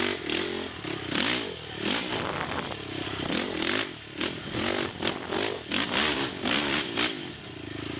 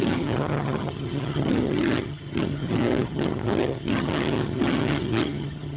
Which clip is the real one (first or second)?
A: first